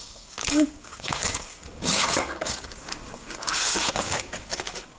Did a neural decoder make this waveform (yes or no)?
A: yes